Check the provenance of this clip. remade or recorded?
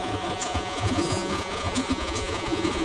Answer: remade